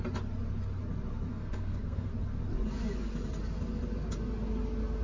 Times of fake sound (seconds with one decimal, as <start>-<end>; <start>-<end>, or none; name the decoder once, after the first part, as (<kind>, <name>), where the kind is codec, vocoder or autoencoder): 1.3-2.1 (codec, SNAC)

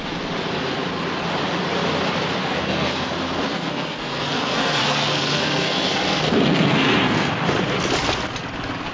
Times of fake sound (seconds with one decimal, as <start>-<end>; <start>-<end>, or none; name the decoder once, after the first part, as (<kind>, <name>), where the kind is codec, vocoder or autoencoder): 2.4-3.1 (codec, SNAC); 3.5-7.3

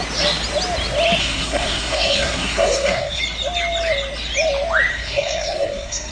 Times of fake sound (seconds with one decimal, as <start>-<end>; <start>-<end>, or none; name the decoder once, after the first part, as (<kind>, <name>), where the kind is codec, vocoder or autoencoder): 1.2-3.2 (codec, SNAC); 4.9-6.1

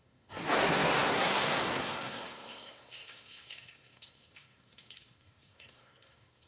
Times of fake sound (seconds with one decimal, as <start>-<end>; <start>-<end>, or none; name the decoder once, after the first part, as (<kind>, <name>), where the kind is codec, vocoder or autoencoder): 0.0-6.5 (codec, SNAC)

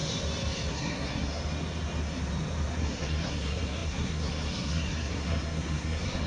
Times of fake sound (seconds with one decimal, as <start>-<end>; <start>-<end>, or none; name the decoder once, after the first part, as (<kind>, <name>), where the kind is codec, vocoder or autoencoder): 0.7-1.4 (codec, SNAC); 2.8-6.3